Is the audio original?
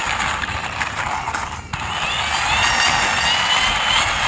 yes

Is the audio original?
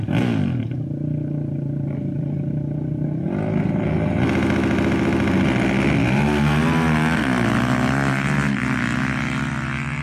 yes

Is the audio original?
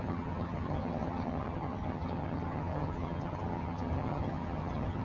no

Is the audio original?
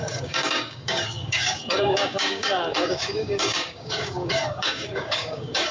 no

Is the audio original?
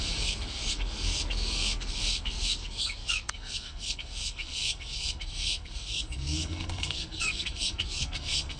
no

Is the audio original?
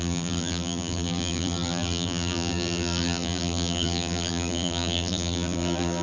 no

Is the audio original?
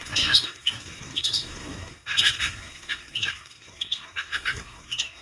no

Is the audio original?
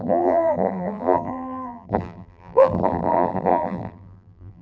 no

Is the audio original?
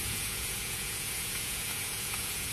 no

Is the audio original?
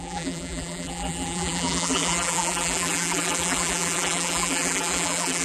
no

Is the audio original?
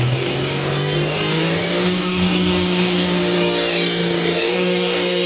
no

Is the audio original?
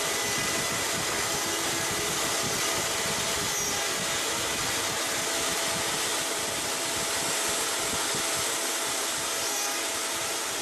yes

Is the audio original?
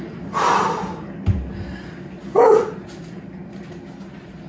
yes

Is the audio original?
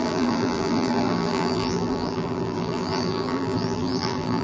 no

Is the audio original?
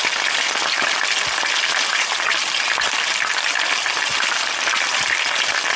yes